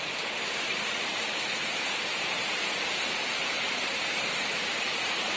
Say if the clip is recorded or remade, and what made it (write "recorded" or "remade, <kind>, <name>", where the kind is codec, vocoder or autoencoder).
remade, vocoder, BigVGAN v2